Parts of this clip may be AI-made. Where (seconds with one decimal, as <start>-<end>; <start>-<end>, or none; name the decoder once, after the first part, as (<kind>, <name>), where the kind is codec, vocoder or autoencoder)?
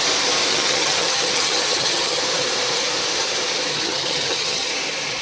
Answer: 0.5-2.2 (vocoder, HiFi-GAN); 3.7-4.7